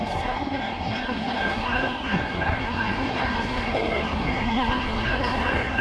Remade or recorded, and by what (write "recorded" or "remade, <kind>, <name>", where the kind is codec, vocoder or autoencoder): remade, codec, SNAC